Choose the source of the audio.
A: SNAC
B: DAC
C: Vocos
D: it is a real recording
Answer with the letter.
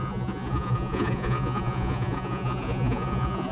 C